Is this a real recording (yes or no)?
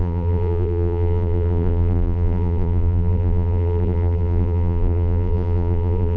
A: no